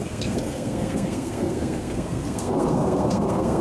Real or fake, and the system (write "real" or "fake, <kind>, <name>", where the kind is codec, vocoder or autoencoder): fake, codec, SNAC